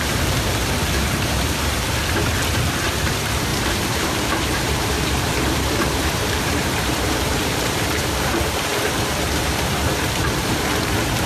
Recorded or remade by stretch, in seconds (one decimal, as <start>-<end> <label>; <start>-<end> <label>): 0.0-2.0 remade; 2.0-3.1 recorded; 3.1-11.3 remade